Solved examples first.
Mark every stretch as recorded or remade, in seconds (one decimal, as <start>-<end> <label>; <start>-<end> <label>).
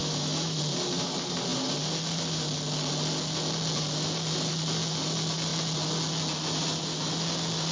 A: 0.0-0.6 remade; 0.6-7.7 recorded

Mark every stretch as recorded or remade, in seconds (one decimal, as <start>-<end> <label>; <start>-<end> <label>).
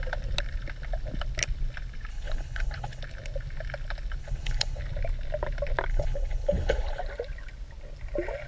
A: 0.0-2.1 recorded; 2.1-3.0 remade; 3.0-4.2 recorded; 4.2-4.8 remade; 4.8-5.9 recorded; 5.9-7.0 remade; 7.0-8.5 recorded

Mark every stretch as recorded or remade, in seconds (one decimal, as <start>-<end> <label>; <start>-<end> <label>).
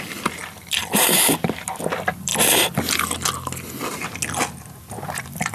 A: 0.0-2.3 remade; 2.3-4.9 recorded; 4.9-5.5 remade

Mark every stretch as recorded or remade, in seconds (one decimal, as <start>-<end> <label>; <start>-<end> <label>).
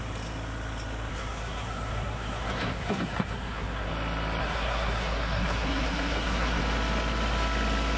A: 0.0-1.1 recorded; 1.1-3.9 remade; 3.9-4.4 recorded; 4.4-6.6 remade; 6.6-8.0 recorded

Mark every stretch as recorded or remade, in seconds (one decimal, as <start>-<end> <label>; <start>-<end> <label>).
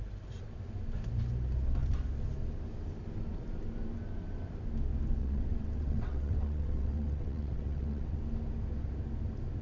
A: 0.0-5.2 recorded; 5.2-8.2 remade; 8.2-9.6 recorded